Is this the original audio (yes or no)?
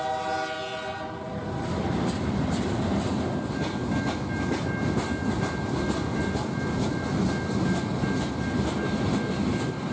yes